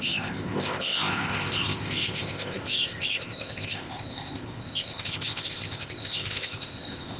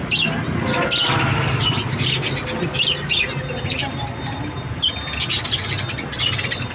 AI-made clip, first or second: first